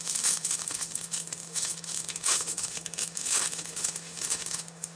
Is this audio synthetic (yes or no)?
yes